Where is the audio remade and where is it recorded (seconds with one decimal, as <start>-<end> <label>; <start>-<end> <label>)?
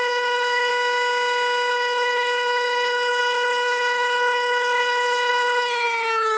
0.0-0.7 remade; 0.7-1.7 recorded; 1.7-6.4 remade